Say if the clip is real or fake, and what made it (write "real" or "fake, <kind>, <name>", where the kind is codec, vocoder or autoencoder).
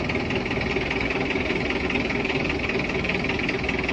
real